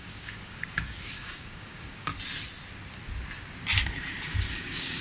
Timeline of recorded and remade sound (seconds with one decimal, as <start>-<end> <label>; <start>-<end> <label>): 0.0-2.1 remade; 2.1-4.5 recorded; 4.5-5.0 remade